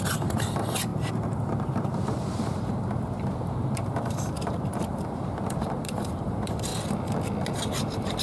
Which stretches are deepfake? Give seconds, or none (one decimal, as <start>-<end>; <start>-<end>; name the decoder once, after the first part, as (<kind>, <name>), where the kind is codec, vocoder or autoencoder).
0.0-6.7 (vocoder, BigVGAN v2); 7.5-8.2